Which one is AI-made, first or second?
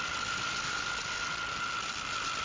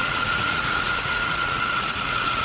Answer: second